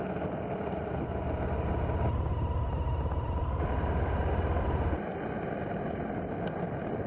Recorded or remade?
recorded